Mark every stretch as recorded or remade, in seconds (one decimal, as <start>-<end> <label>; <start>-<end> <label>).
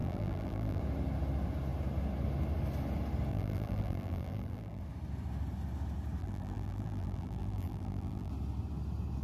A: 0.0-0.8 remade; 0.8-3.3 recorded; 3.3-4.8 remade; 4.8-6.2 recorded; 6.2-8.3 remade; 8.3-9.2 recorded